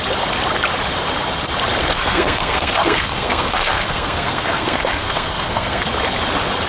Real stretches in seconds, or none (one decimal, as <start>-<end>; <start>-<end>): 0.0-1.8; 5.8-6.7